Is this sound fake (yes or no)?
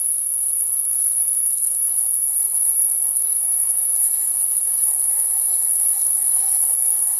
yes